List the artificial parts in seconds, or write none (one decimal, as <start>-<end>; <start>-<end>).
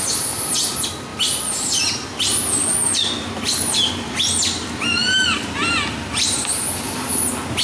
none